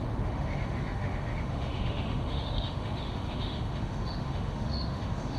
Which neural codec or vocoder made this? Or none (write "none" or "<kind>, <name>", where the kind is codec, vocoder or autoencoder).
autoencoder, DAC-VAE